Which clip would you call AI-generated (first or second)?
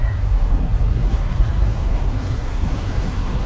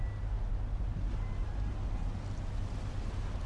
first